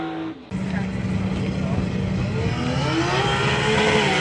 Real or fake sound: real